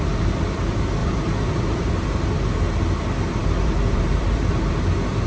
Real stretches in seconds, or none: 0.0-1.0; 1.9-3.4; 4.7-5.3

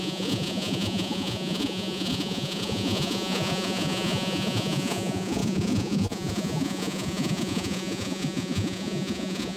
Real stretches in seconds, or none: none

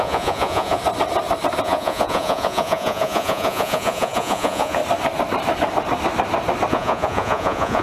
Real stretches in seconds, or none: 0.8-1.6; 4.8-6.7

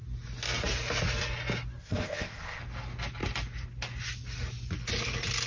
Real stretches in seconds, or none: 0.0-1.8; 2.6-5.5

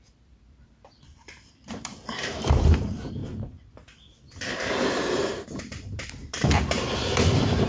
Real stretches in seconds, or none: 3.2-3.7